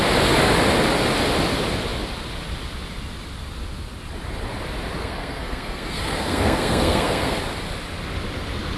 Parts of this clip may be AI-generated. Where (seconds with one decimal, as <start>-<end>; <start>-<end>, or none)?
5.0-7.4